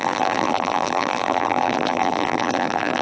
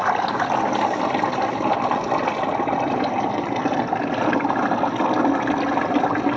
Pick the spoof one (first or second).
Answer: first